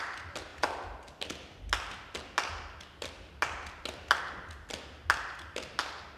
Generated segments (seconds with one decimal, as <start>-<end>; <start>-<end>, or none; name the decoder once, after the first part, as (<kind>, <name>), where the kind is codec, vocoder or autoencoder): none